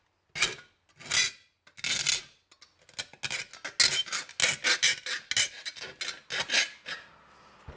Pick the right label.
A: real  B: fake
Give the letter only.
A